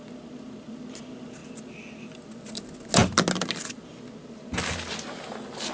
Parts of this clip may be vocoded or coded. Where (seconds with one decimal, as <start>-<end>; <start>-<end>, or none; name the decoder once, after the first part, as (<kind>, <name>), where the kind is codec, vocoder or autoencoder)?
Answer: none